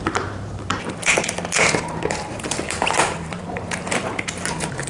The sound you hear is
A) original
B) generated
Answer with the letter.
B